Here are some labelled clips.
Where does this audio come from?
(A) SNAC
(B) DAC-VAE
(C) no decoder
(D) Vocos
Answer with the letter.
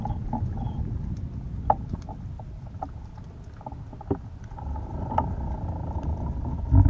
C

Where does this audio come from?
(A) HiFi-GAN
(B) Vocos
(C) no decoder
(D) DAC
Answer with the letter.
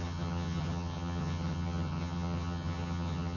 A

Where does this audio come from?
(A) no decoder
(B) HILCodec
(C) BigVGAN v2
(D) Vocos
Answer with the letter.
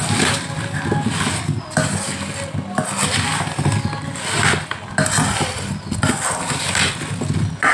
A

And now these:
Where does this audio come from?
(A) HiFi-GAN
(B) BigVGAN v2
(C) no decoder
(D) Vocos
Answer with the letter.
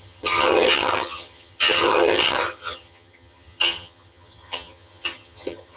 A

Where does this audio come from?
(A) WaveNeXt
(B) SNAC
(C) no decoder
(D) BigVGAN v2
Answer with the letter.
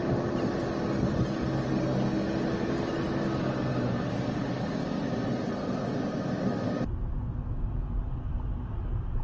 C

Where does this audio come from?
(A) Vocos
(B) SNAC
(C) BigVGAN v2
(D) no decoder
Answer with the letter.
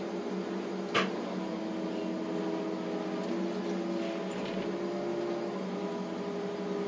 D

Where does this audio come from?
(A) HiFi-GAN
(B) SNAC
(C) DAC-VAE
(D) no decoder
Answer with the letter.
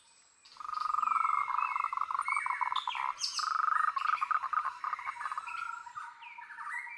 D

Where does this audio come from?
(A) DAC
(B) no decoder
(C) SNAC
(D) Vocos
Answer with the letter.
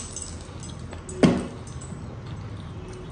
B